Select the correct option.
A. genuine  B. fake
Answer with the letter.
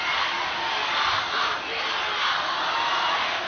A